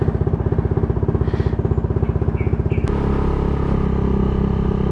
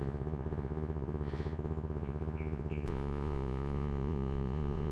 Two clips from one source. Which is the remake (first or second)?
second